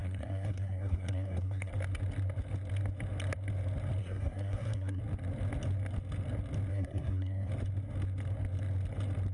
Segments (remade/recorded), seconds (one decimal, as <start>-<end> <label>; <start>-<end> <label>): 0.0-1.7 remade; 1.7-4.0 recorded; 4.0-5.0 remade; 5.0-6.7 recorded; 6.7-7.5 remade; 7.5-9.3 recorded